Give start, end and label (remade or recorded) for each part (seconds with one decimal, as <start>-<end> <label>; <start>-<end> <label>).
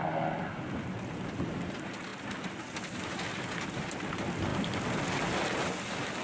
0.0-2.1 recorded; 2.1-2.6 remade; 2.6-4.5 recorded; 4.5-5.1 remade; 5.1-6.2 recorded